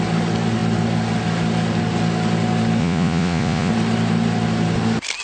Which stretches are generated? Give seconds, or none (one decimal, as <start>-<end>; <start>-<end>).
2.8-3.7